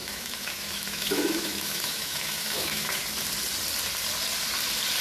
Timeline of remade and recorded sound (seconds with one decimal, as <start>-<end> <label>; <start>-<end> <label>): 0.0-3.0 remade; 3.0-5.0 recorded